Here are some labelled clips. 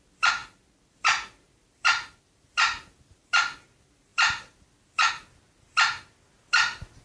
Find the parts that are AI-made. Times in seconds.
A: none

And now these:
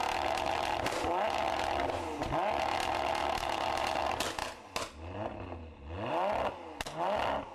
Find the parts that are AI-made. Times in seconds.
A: none

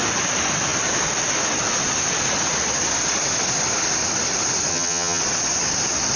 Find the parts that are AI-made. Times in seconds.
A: 4.7-5.2 (vocoder, HiFi-GAN)